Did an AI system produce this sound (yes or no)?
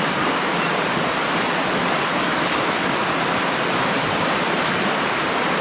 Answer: no